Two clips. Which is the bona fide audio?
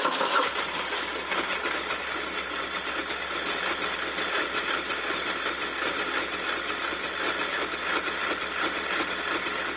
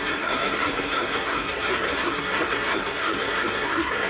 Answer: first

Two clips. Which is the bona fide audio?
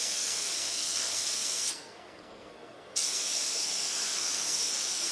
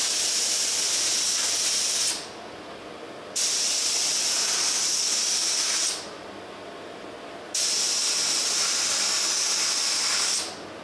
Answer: second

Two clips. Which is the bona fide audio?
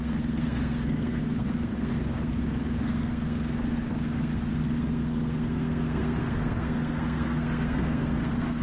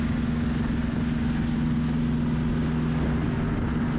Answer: second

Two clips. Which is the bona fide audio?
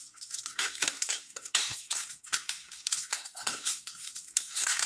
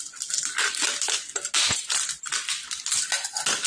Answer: second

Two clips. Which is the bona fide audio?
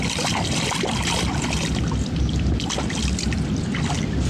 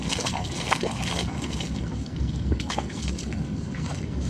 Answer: first